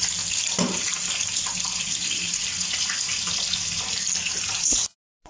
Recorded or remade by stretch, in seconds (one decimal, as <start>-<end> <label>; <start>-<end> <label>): 0.0-5.3 recorded